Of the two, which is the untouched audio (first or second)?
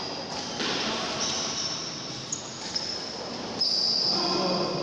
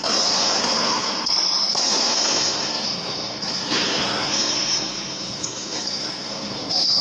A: first